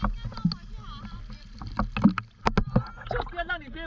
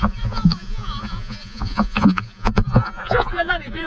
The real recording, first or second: first